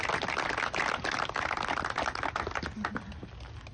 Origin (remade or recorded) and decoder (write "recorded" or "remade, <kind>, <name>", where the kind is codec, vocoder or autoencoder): recorded